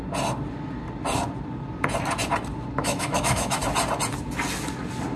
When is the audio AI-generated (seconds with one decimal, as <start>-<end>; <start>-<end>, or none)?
2.8-3.6